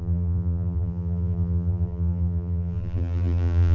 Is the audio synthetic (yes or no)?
yes